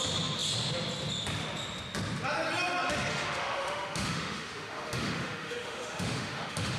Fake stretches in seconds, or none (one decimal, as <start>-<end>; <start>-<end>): 3.1-6.8